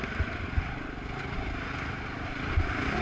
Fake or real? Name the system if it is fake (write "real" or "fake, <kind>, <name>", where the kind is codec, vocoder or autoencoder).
real